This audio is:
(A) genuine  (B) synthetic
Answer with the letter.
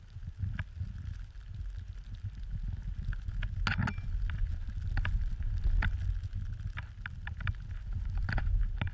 A